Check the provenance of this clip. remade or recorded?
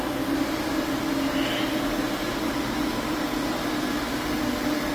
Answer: recorded